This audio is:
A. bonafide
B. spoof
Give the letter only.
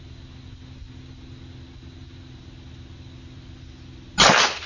A